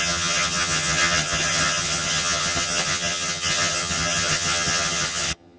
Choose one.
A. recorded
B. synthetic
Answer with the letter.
B